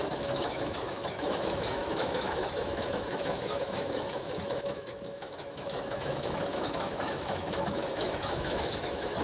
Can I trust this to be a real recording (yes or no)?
no